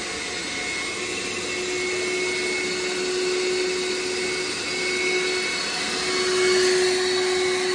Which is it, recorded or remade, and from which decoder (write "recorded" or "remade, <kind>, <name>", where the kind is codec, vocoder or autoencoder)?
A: recorded